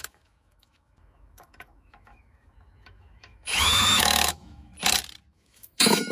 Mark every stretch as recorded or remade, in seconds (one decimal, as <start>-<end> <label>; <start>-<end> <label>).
0.0-4.7 remade; 4.7-5.3 recorded; 5.3-6.1 remade